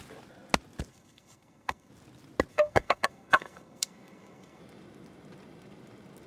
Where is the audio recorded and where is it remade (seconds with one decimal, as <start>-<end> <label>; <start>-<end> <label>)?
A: 0.0-0.9 recorded; 0.9-1.9 remade; 1.9-2.5 recorded; 2.5-4.6 remade; 4.6-6.3 recorded

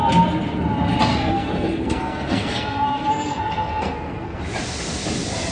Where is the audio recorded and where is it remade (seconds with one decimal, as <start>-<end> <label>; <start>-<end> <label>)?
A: 0.0-1.1 recorded; 1.1-4.4 remade; 4.4-5.5 recorded

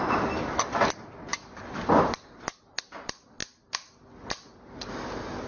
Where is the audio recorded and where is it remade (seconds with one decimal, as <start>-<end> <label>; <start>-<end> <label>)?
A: 0.0-5.5 recorded

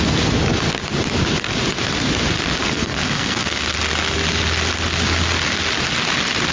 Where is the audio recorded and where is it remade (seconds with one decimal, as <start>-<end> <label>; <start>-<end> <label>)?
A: 0.0-2.6 recorded; 2.6-3.6 remade; 3.6-6.5 recorded

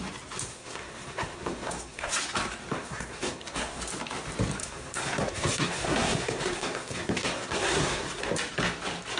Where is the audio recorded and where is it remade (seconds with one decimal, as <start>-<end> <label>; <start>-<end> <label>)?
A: 0.0-0.5 recorded; 0.5-2.1 remade; 2.1-2.7 recorded; 2.7-3.8 remade; 3.8-4.6 recorded; 4.6-8.2 remade; 8.2-9.2 recorded

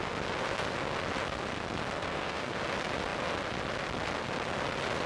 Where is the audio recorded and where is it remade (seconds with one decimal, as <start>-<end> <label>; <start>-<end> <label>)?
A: 0.0-2.0 recorded; 2.0-2.6 remade; 2.6-5.1 recorded